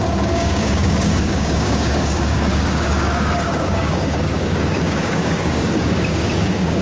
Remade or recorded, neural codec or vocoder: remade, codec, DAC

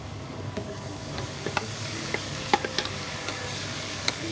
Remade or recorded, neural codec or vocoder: remade, codec, DAC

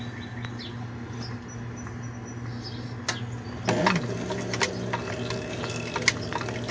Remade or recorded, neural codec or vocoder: recorded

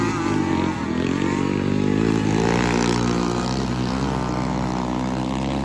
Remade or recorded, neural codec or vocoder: recorded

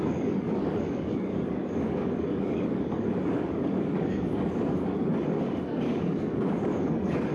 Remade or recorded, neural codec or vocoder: remade, codec, DAC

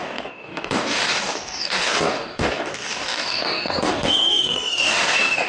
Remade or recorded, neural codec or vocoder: remade, codec, DAC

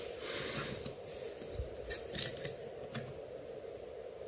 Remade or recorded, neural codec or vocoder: recorded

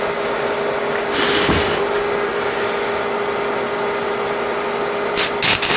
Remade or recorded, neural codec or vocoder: recorded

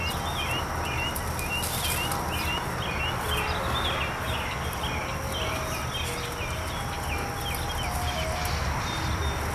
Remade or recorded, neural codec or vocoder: recorded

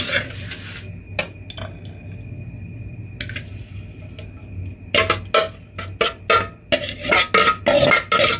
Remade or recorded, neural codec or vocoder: recorded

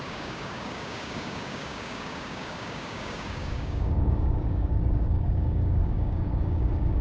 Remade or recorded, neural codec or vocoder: remade, codec, DAC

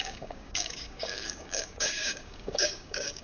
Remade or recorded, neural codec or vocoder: remade, codec, DAC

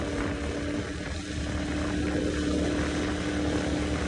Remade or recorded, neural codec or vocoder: recorded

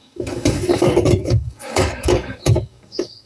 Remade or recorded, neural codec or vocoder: remade, codec, DAC